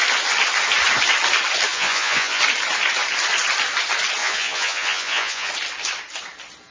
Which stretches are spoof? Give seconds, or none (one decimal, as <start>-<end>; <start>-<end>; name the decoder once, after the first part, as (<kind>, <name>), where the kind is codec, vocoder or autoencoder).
1.7-2.4 (vocoder, Vocos); 4.2-5.5